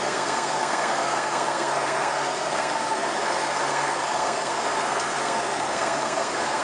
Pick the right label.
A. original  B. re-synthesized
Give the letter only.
B